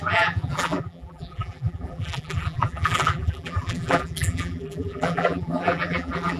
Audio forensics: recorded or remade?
remade